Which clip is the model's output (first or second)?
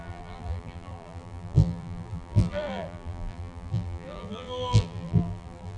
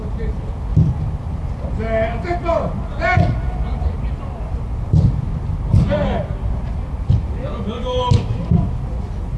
first